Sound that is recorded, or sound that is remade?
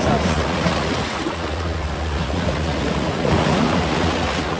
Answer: remade